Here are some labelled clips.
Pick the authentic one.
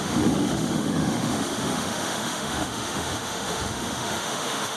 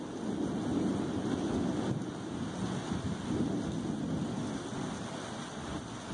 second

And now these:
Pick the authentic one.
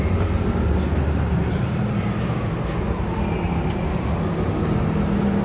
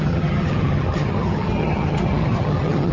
first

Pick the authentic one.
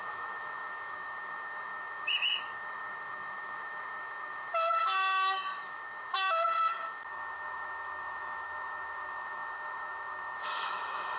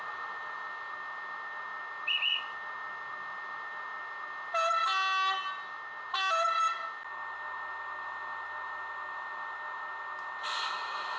second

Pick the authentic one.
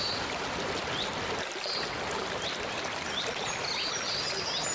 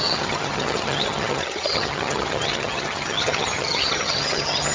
first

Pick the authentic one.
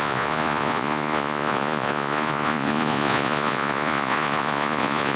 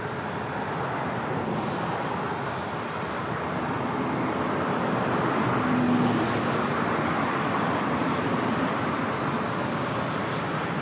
second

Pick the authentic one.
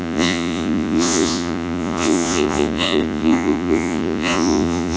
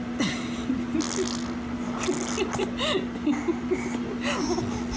second